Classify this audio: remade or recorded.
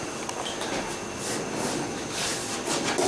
recorded